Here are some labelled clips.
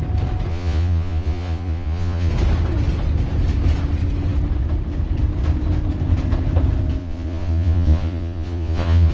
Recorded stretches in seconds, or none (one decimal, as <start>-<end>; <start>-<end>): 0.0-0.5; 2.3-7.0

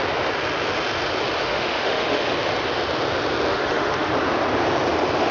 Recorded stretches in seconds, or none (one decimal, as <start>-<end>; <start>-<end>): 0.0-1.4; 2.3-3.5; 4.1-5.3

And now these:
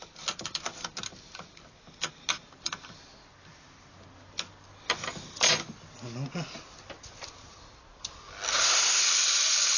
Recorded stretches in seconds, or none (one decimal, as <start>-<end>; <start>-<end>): 0.0-8.5; 9.0-9.8

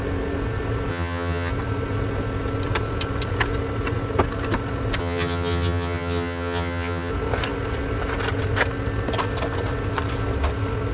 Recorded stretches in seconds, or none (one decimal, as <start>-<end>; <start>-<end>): 0.0-0.9; 1.5-5.0; 7.1-10.9

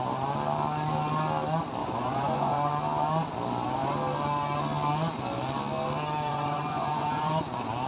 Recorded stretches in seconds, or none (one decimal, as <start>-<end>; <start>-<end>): 0.0-1.8; 2.7-6.3; 7.4-7.9

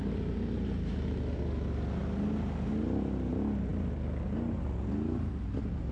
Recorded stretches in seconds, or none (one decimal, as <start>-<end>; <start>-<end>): 0.0-5.9